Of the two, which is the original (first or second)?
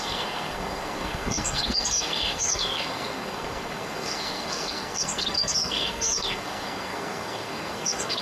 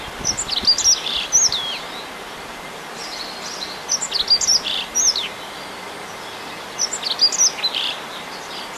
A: second